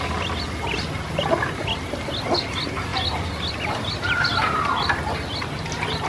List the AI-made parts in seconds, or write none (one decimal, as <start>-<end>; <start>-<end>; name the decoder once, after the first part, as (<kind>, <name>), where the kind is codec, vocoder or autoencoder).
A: none